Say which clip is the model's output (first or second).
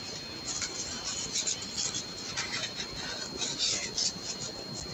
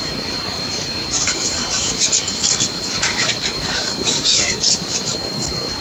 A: second